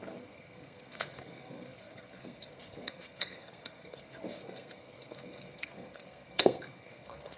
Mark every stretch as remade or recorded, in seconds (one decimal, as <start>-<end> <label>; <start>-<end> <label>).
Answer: 0.0-7.4 remade